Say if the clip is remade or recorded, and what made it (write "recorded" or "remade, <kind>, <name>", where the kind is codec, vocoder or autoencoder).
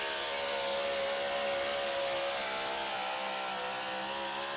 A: recorded